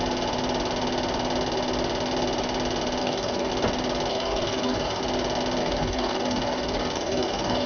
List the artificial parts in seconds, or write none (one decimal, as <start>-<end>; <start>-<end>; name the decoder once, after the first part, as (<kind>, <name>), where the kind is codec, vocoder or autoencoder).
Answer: 3.0-3.5 (codec, DAC); 4.1-5.0; 5.6-7.7